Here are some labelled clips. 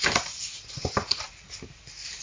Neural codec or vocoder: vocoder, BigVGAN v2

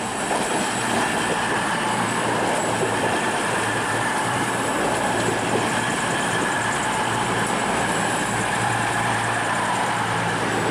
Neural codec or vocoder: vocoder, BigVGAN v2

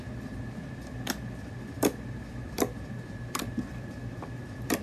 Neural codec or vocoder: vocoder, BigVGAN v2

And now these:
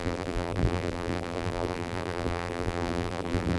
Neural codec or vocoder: vocoder, BigVGAN v2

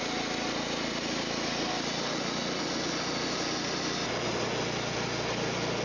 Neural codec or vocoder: none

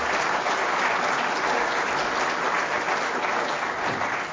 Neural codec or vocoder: none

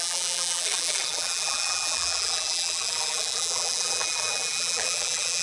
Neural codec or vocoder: vocoder, BigVGAN v2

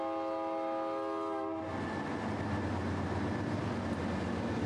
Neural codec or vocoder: none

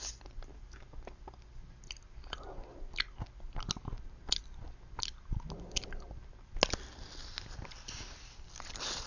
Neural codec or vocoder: none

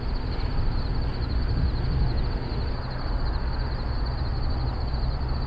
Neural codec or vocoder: none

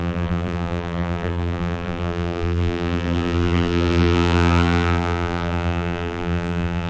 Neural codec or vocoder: vocoder, BigVGAN v2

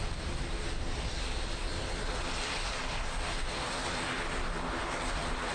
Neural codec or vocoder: vocoder, BigVGAN v2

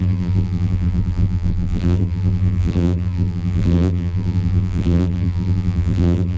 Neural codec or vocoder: vocoder, BigVGAN v2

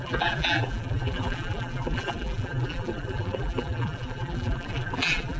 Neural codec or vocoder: vocoder, BigVGAN v2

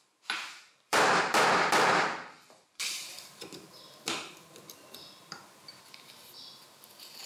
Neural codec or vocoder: vocoder, BigVGAN v2